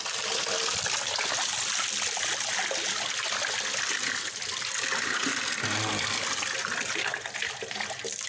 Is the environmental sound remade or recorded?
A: recorded